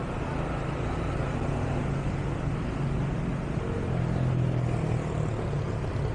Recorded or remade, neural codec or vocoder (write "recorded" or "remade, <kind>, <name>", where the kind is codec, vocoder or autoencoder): recorded